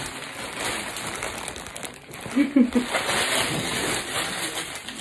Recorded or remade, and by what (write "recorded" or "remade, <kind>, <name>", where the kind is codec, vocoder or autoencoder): recorded